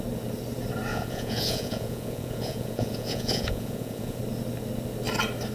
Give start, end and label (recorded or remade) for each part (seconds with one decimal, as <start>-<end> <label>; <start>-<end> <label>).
0.0-0.9 recorded; 0.9-4.2 remade; 4.2-5.5 recorded